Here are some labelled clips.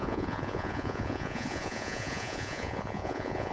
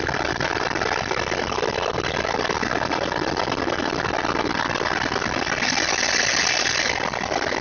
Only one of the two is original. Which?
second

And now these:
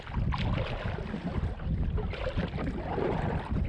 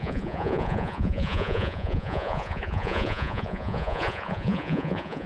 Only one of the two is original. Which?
first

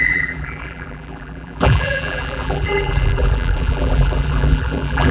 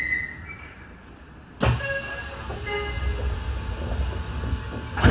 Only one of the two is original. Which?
second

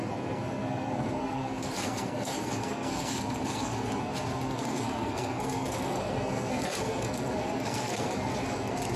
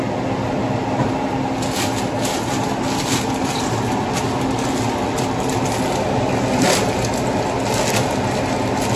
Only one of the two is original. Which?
second